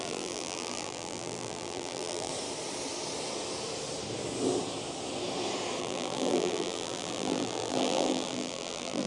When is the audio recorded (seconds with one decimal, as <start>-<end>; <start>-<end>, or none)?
2.3-5.8